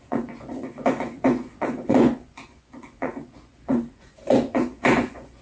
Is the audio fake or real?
fake